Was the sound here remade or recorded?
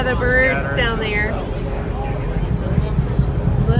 recorded